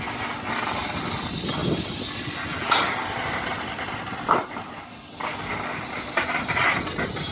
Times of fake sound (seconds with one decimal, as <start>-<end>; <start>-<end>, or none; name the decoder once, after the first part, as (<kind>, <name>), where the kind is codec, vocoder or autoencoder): none